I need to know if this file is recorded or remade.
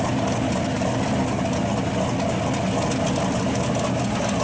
recorded